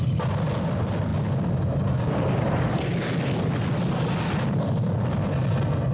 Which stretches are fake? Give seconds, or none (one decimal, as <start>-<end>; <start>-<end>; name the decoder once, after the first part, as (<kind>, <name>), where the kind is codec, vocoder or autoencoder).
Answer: none